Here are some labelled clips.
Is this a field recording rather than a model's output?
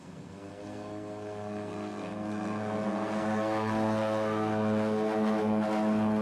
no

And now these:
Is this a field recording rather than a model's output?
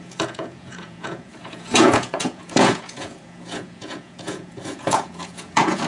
no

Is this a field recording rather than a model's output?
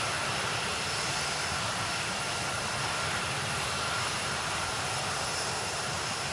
yes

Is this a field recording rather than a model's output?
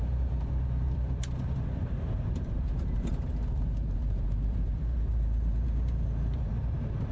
no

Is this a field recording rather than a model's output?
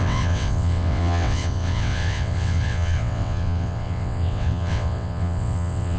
no